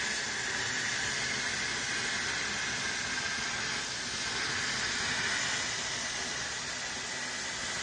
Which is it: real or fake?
real